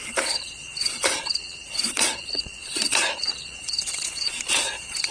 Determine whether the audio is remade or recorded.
remade